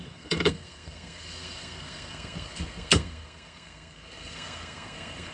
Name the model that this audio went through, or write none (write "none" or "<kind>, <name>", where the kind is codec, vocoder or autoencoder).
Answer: codec, SNAC